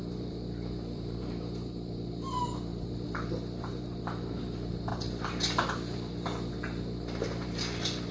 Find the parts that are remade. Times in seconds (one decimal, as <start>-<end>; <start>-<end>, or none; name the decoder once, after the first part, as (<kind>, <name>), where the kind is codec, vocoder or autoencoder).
0.0-8.1 (vocoder, BigVGAN v2)